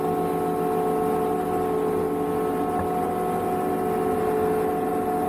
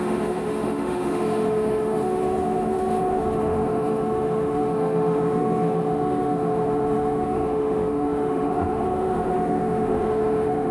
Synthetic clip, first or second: second